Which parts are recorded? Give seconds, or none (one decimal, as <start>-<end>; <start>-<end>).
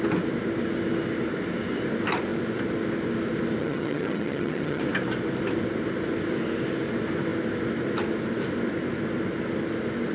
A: 0.0-3.6; 4.8-10.1